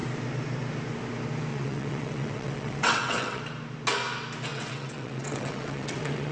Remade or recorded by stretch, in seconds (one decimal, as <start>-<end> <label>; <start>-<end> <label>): 0.0-1.5 recorded; 1.5-3.4 remade; 3.4-4.5 recorded; 4.5-6.3 remade